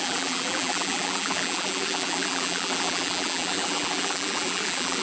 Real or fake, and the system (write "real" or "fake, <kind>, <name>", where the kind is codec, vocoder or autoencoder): fake, vocoder, BigVGAN v2